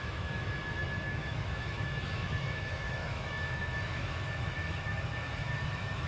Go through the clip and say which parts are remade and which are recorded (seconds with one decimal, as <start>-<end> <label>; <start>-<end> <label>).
0.0-6.1 remade